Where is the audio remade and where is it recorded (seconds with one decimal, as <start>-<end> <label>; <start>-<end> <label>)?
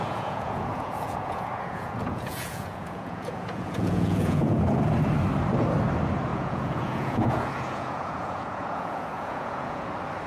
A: 0.0-4.6 remade; 4.6-6.3 recorded; 6.3-9.9 remade; 9.9-10.3 recorded